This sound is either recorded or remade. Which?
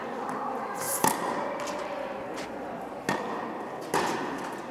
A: recorded